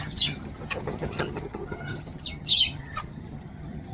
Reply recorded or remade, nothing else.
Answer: remade